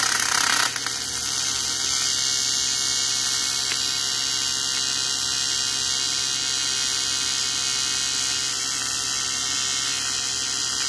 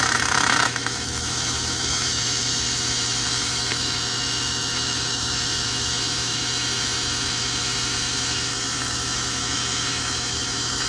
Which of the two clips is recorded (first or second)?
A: first